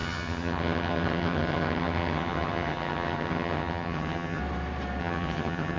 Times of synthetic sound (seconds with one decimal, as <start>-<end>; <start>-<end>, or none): 0.0-4.4; 5.0-5.8